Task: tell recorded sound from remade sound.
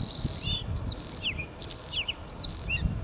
recorded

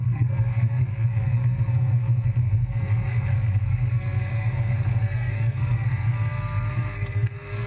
remade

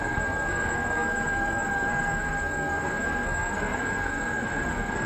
remade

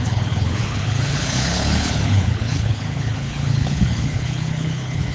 remade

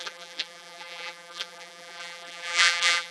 remade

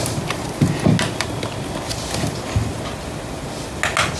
recorded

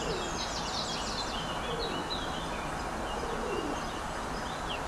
recorded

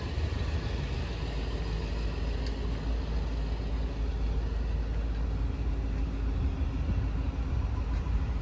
recorded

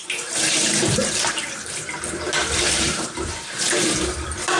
remade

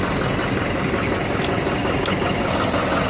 recorded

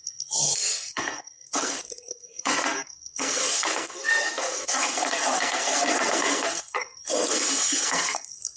remade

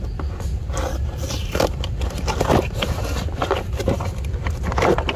recorded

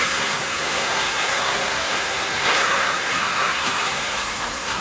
remade